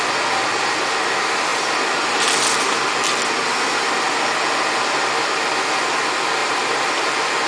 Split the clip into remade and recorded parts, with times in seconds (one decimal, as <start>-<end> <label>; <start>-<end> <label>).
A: 0.0-6.4 recorded; 6.4-7.1 remade; 7.1-7.5 recorded